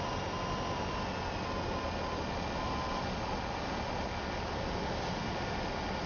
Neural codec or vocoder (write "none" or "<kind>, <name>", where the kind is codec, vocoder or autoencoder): none